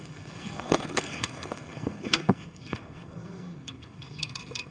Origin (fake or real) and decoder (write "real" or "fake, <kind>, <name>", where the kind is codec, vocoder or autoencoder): fake, codec, SNAC